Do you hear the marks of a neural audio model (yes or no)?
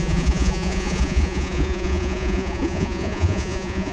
yes